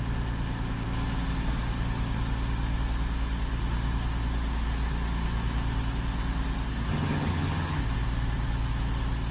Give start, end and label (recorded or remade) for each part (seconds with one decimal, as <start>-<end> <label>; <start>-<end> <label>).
0.0-6.9 recorded; 6.9-7.8 remade; 7.8-9.3 recorded